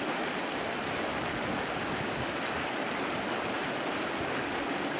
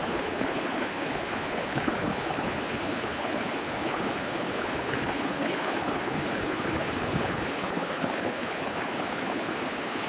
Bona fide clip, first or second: first